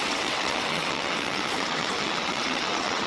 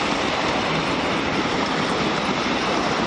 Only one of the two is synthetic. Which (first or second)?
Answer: first